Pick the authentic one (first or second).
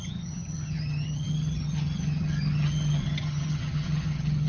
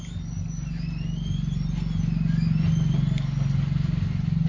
second